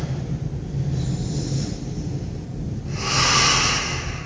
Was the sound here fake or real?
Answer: real